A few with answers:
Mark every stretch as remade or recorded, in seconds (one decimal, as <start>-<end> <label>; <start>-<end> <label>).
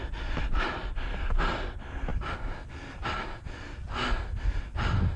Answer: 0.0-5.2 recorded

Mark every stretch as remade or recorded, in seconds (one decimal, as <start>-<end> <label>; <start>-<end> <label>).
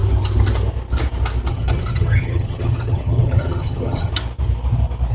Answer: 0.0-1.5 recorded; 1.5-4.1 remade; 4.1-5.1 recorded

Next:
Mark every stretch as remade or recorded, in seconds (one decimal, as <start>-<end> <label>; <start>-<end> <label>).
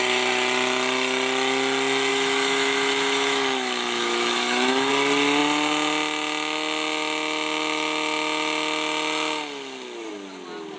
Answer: 0.0-2.1 recorded; 2.1-4.9 remade; 4.9-10.8 recorded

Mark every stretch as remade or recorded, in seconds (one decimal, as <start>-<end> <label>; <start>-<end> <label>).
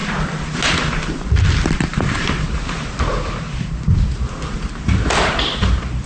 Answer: 0.0-3.7 remade; 3.7-6.1 recorded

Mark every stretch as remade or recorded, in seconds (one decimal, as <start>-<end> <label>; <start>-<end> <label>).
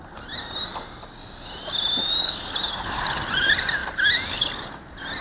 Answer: 0.0-5.2 recorded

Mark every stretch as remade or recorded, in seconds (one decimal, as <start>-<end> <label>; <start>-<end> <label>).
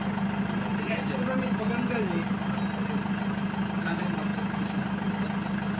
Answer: 0.0-5.8 recorded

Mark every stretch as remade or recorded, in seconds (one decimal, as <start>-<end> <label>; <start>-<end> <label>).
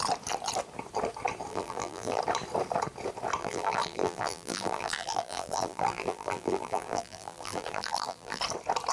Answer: 0.0-1.5 recorded; 1.5-2.2 remade; 2.2-3.4 recorded; 3.4-8.4 remade; 8.4-8.9 recorded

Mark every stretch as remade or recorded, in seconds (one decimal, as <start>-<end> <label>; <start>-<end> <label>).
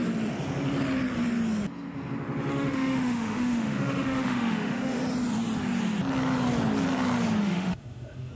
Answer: 0.0-2.5 recorded; 2.5-5.0 remade; 5.0-7.4 recorded; 7.4-8.3 remade